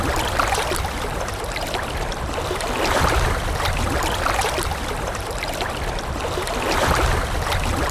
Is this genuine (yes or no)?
no